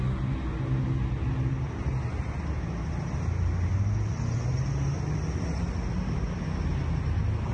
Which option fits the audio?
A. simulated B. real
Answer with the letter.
B